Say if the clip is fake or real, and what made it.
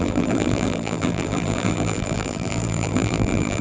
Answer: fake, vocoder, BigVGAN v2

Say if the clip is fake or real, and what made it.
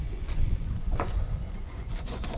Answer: fake, vocoder, Vocos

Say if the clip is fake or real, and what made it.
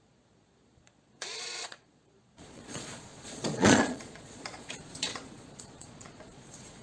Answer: fake, vocoder, Vocos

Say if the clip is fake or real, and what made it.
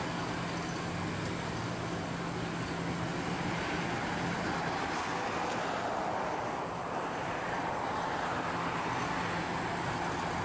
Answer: real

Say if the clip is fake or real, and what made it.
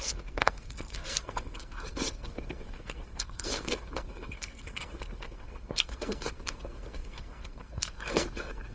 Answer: fake, codec, SNAC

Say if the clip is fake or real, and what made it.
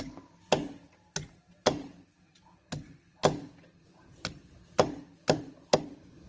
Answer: real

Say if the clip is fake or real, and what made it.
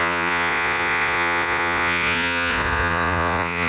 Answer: fake, vocoder, Vocos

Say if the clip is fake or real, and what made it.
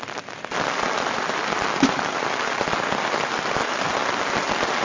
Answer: real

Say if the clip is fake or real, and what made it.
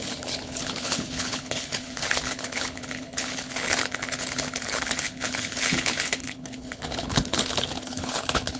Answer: fake, codec, HILCodec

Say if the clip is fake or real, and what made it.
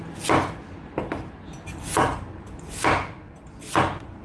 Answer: real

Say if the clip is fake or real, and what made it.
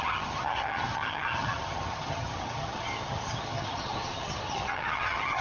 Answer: fake, vocoder, HiFi-GAN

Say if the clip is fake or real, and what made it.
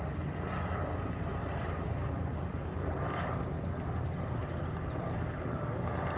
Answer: real